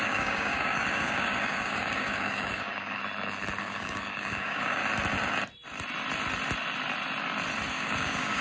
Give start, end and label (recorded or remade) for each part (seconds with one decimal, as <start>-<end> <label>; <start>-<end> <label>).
0.0-3.0 remade; 3.0-3.6 recorded; 3.6-4.8 remade; 4.8-7.7 recorded; 7.7-8.4 remade

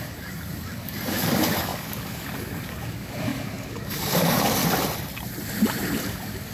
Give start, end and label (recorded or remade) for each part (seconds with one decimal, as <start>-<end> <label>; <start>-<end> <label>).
0.0-4.6 remade; 4.6-6.0 recorded; 6.0-6.5 remade